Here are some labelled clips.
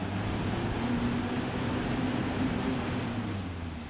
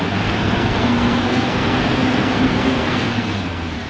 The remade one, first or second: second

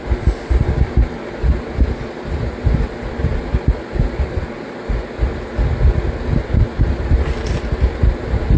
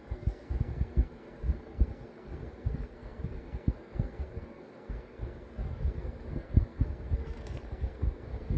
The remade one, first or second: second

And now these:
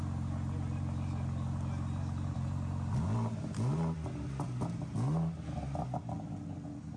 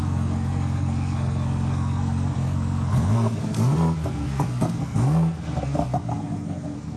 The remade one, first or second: second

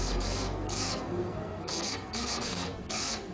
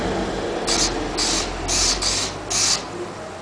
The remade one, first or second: first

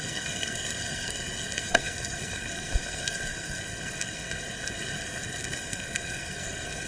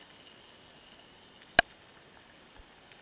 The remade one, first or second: first